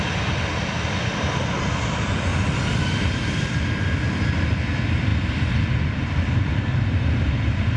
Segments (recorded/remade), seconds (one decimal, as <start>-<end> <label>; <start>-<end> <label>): 0.0-7.8 recorded

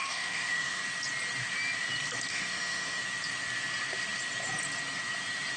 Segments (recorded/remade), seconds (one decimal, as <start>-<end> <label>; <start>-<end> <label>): 0.0-0.8 remade; 0.8-2.3 recorded; 2.3-3.0 remade; 3.0-5.6 recorded

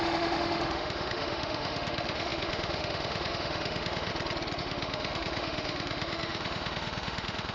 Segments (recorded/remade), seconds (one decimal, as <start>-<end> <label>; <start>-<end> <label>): 0.0-4.1 remade; 4.1-4.6 recorded; 4.6-7.5 remade

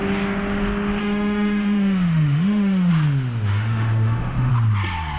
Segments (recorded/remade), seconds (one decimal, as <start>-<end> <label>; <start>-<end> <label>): 0.0-1.0 recorded; 1.0-2.9 remade; 2.9-3.5 recorded; 3.5-4.5 remade; 4.5-5.2 recorded

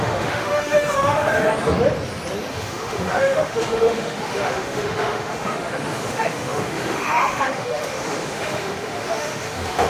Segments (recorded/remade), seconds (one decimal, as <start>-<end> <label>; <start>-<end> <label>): 0.0-1.5 remade; 1.5-2.5 recorded; 2.5-9.9 remade

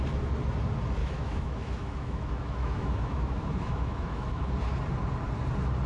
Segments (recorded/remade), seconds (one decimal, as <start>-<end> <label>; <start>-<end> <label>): 0.0-1.0 recorded; 1.0-4.5 remade; 4.5-5.9 recorded

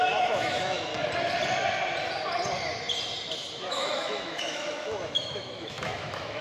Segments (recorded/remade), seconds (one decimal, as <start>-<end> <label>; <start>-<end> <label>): 0.0-0.9 remade; 0.9-3.7 recorded; 3.7-6.4 remade